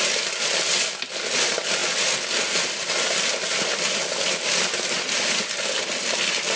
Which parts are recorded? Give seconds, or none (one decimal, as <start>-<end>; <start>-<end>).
0.0-6.5